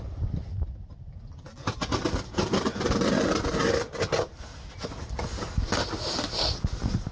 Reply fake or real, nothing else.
real